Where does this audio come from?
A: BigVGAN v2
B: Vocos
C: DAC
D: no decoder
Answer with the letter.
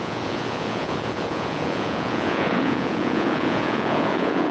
B